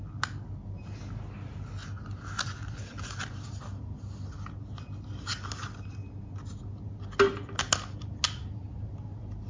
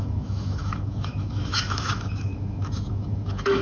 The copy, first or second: second